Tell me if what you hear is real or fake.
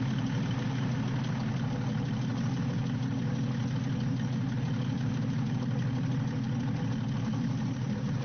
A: real